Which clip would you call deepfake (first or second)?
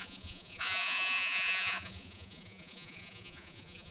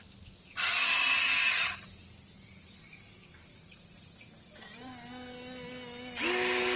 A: first